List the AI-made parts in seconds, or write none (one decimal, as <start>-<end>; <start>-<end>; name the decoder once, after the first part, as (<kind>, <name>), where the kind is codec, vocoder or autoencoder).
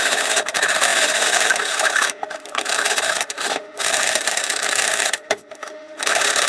0.0-6.5 (autoencoder, DAC-VAE)